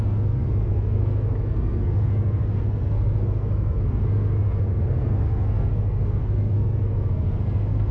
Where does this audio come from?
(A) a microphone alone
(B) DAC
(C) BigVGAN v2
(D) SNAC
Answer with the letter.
D